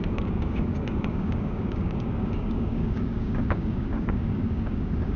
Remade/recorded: remade